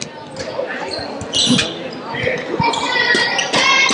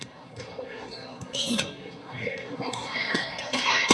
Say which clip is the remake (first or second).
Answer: second